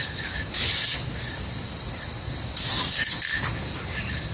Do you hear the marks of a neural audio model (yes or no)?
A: no